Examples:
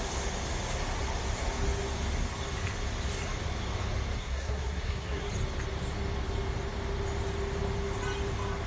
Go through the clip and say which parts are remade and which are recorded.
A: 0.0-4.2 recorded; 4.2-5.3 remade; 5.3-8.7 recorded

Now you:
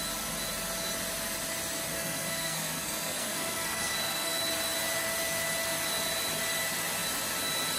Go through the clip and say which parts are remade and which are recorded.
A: 0.0-1.9 recorded; 1.9-4.4 remade; 4.4-7.8 recorded

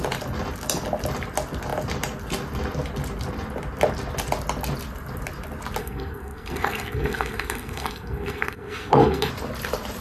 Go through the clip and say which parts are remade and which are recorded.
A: 0.0-5.8 recorded; 5.8-9.3 remade; 9.3-10.0 recorded